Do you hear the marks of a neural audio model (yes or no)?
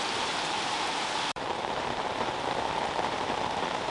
yes